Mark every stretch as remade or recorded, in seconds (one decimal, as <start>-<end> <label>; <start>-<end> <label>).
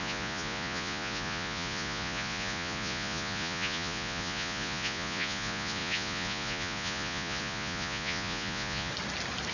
0.0-8.9 remade; 8.9-9.5 recorded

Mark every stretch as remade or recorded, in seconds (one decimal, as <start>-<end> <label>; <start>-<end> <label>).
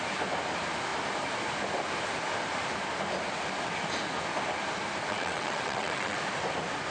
0.0-5.1 recorded; 5.1-6.2 remade; 6.2-6.9 recorded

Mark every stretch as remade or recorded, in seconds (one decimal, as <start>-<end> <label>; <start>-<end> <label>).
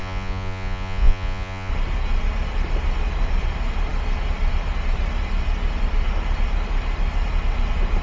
0.0-1.7 remade; 1.7-8.0 recorded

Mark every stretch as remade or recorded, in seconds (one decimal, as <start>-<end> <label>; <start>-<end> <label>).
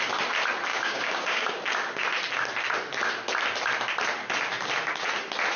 0.0-0.7 recorded; 0.7-1.5 remade; 1.5-5.6 recorded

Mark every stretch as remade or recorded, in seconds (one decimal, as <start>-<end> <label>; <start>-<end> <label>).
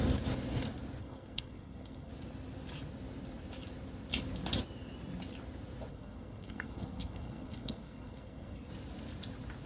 0.0-1.0 recorded; 1.0-2.1 remade; 2.1-5.9 recorded; 5.9-8.7 remade; 8.7-9.7 recorded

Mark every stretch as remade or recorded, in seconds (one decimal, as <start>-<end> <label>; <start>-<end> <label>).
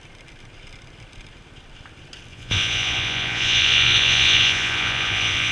0.0-2.3 recorded; 2.3-5.5 remade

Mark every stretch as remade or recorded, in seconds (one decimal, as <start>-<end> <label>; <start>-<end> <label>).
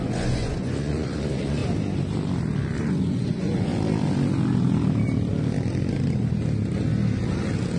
0.0-1.6 remade; 1.6-2.8 recorded; 2.8-3.7 remade; 3.7-7.8 recorded